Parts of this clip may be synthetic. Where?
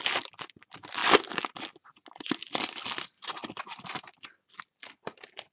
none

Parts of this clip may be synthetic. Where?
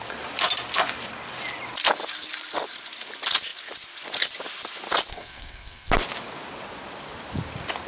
5.1-5.9 (codec, SNAC)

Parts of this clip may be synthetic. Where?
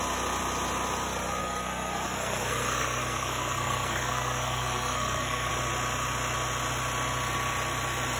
1.4-5.5 (codec, SNAC)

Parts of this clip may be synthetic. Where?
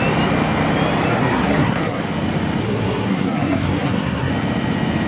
1.1-2.0 (codec, SNAC); 2.6-4.3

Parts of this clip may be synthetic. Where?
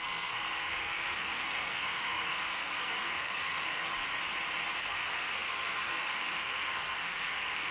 0.0-3.9 (codec, SNAC); 4.8-7.7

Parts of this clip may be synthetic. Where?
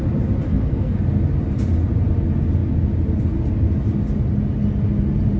0.5-1.0 (codec, SNAC)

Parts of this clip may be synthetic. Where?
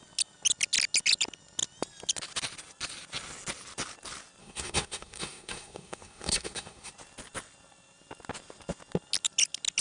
4.4-6.9 (codec, SNAC)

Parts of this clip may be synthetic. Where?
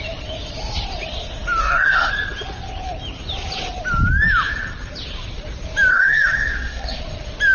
1.6-2.1 (codec, SNAC); 5.9-7.0